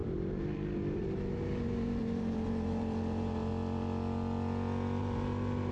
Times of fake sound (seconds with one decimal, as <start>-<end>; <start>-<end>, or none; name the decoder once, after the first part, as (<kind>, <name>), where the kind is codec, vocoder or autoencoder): 0.0-3.5 (vocoder, BigVGAN v2); 5.0-5.7